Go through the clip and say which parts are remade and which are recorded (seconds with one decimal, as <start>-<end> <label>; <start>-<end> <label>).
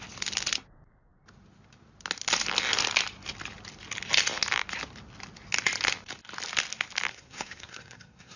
0.0-7.1 recorded; 7.1-8.4 remade